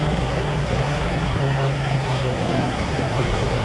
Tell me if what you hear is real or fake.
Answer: fake